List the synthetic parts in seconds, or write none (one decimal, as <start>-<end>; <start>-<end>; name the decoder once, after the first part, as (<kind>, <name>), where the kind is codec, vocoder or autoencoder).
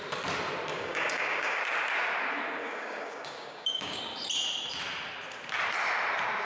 0.7-1.6 (codec, DAC); 2.6-4.0